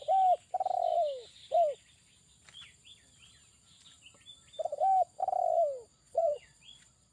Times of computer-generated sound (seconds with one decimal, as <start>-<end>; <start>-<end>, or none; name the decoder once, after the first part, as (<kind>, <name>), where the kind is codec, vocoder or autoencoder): 5.9-7.1 (vocoder, Vocos)

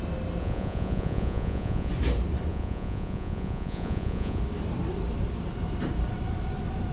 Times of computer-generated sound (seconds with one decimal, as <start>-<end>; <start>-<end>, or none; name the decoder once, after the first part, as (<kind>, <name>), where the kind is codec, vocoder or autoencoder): 0.4-1.9 (vocoder, Vocos); 2.5-4.4

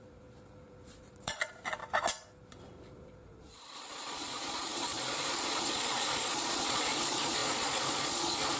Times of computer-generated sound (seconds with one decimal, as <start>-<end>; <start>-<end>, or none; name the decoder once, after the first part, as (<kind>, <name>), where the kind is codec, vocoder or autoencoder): 0.0-1.8 (vocoder, Vocos); 2.9-8.6

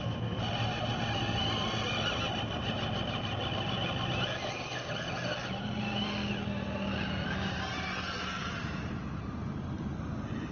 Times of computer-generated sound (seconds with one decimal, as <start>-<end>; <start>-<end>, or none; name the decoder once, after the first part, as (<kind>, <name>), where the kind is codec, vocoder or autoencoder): none

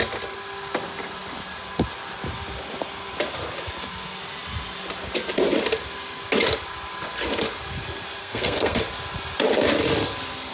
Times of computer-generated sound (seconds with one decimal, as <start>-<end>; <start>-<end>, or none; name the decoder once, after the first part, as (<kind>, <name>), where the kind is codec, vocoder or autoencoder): 8.2-8.8 (codec, SNAC)